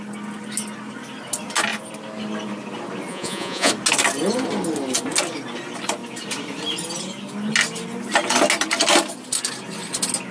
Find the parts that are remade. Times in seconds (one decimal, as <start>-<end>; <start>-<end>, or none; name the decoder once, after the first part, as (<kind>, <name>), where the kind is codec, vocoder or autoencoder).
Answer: 3.1-3.7 (vocoder, Vocos)